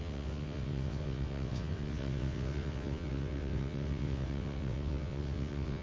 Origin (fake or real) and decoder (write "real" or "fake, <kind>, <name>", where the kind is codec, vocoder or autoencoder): fake, vocoder, WaveNeXt